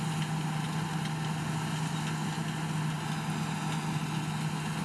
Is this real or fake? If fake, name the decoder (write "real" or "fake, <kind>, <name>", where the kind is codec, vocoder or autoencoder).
real